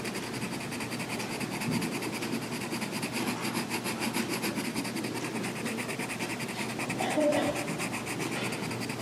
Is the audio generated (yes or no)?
no